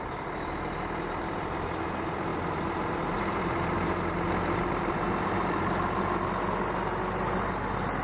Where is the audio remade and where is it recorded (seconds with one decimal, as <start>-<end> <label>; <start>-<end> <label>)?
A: 0.0-8.0 recorded